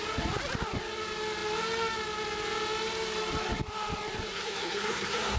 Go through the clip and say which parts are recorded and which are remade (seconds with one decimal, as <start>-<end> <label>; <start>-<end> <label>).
0.0-4.3 recorded; 4.3-5.4 remade

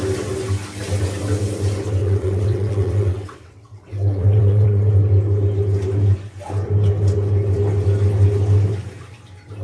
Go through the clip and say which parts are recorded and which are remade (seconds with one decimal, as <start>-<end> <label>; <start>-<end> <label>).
0.0-2.0 recorded; 2.0-4.9 remade; 4.9-9.6 recorded

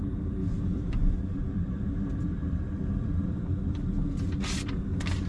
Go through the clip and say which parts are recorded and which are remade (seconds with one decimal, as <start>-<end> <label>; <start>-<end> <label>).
0.0-0.4 recorded; 0.4-1.2 remade; 1.2-2.4 recorded; 2.4-3.4 remade; 3.4-5.3 recorded

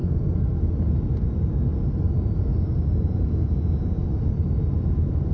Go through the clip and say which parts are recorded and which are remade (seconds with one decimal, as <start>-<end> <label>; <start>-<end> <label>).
0.0-0.6 remade; 0.6-5.3 recorded

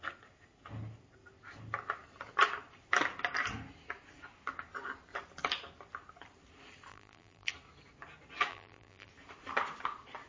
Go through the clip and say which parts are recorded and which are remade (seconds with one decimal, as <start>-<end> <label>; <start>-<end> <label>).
0.0-6.9 recorded; 6.9-7.5 remade; 7.5-8.5 recorded; 8.5-9.1 remade; 9.1-10.3 recorded